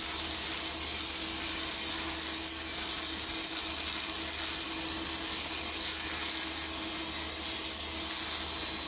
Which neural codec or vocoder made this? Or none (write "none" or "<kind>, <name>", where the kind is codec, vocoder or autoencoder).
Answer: none